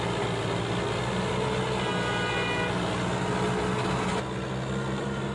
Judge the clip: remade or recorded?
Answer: recorded